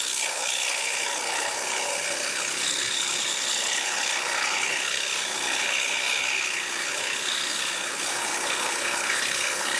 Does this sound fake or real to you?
fake